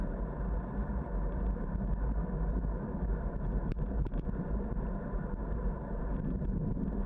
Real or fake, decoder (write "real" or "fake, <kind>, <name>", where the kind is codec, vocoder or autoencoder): fake, vocoder, BigVGAN v2